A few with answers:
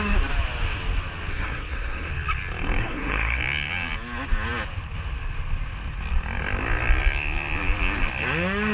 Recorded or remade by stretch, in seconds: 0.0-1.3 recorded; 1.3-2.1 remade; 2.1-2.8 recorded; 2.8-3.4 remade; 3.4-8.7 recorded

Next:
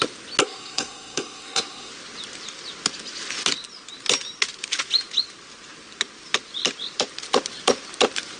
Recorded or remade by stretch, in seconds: 0.0-0.4 recorded; 0.4-1.9 remade; 1.9-8.4 recorded

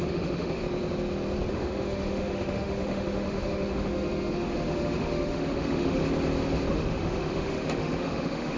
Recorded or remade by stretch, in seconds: 0.0-0.6 remade; 0.6-1.5 recorded; 1.5-6.0 remade; 6.0-6.7 recorded; 6.7-8.6 remade

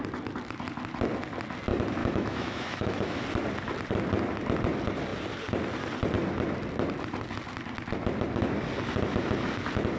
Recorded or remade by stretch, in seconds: 0.0-2.0 recorded; 2.0-3.2 remade; 3.2-10.0 recorded

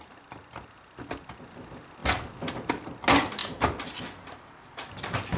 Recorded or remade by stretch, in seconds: 0.0-5.4 recorded

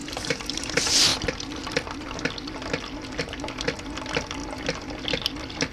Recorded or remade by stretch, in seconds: 0.0-0.7 remade; 0.7-5.7 recorded